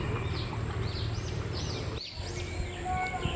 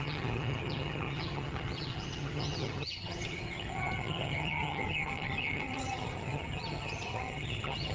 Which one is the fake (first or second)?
second